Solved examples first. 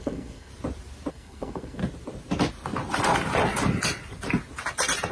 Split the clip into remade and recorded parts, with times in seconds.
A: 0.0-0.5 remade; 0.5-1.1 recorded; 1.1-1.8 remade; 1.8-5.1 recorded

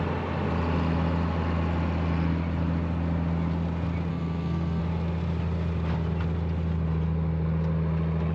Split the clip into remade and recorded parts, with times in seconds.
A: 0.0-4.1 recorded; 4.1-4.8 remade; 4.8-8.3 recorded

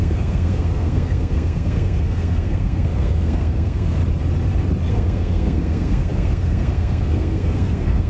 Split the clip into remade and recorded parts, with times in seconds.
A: 0.0-4.0 remade; 4.0-4.9 recorded; 4.9-8.1 remade

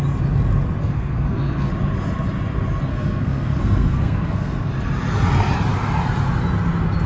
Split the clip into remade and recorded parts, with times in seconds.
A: 0.0-0.8 recorded; 0.8-1.7 remade; 1.7-2.9 recorded; 2.9-4.7 remade; 4.7-7.1 recorded

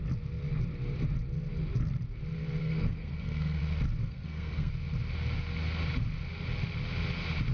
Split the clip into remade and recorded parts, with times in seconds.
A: 0.0-2.6 recorded; 2.6-3.6 remade; 3.6-4.0 recorded; 4.0-4.7 remade; 4.7-7.5 recorded

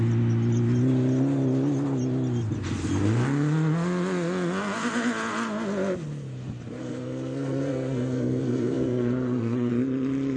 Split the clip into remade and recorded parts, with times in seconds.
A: 0.0-6.8 recorded; 6.8-9.7 remade; 9.7-10.4 recorded

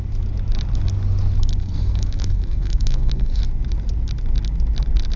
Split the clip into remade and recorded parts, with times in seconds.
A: 0.0-1.6 recorded; 1.6-3.4 remade; 3.4-5.2 recorded

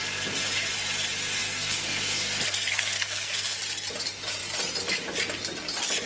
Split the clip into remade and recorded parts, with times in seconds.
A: 0.0-1.4 recorded; 1.4-3.6 remade; 3.6-6.1 recorded